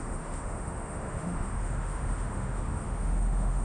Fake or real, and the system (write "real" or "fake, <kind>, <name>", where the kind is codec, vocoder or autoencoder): fake, autoencoder, DAC-VAE